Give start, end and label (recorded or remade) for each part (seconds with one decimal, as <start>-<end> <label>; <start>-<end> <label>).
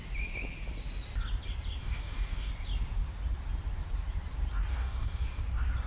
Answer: 0.0-1.8 recorded; 1.8-2.5 remade; 2.5-4.7 recorded; 4.7-5.4 remade; 5.4-5.9 recorded